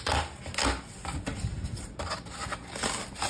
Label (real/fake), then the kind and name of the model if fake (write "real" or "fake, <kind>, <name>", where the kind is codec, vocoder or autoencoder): real